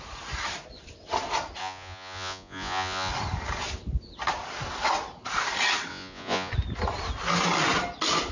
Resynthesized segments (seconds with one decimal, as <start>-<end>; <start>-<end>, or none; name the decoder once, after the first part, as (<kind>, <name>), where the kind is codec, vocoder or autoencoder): 1.6-3.1 (vocoder, Vocos); 5.9-6.5